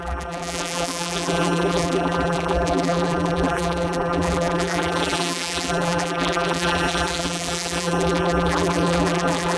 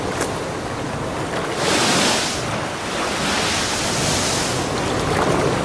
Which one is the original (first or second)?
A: second